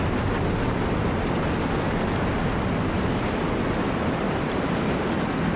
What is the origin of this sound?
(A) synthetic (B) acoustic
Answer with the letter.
B